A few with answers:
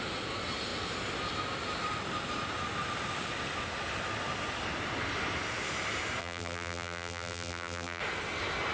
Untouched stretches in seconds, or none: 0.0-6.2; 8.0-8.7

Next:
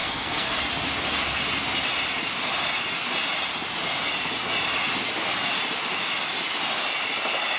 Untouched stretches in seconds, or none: 0.6-7.6